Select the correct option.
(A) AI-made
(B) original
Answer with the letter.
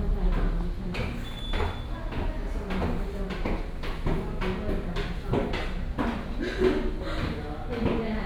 B